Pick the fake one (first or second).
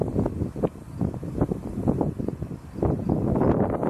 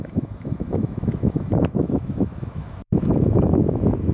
second